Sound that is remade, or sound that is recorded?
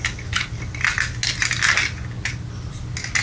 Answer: recorded